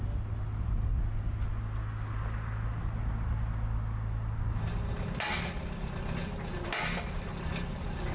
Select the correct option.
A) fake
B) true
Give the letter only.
B